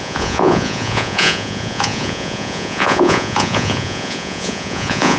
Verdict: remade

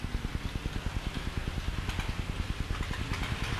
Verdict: recorded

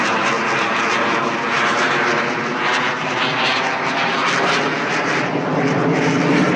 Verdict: recorded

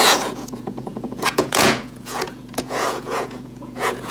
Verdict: remade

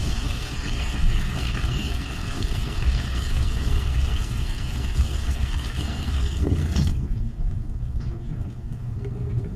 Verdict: remade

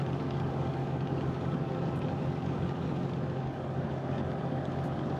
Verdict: remade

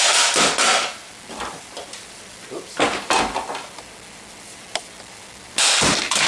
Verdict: remade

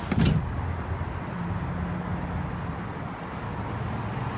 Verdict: recorded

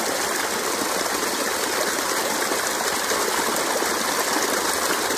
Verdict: recorded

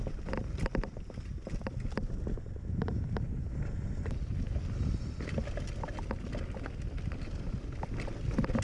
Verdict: recorded